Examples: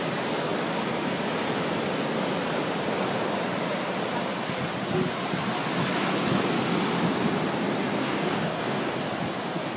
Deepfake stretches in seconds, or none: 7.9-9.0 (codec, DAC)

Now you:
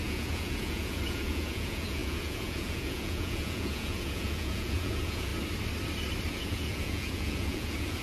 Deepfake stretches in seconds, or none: 0.0-5.3 (vocoder, Vocos); 6.3-8.0

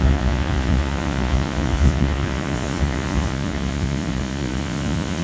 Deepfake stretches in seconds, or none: 0.0-5.2 (vocoder, Vocos)